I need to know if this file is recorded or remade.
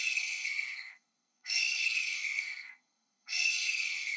remade